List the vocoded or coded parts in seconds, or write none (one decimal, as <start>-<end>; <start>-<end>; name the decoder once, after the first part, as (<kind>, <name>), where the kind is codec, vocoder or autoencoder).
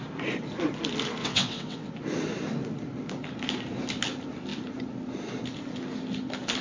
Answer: 1.2-1.9 (vocoder, WaveNeXt)